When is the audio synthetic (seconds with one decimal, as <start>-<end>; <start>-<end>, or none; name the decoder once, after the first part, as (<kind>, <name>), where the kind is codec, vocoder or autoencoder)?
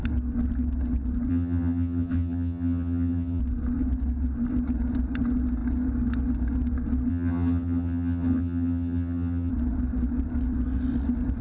1.3-3.4 (vocoder, HiFi-GAN); 7.1-9.5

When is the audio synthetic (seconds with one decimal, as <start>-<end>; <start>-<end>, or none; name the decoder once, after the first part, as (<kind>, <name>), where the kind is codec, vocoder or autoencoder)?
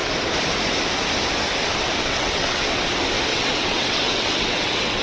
2.0-2.8 (vocoder, WaveNeXt); 3.3-5.0